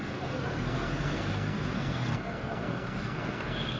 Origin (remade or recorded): remade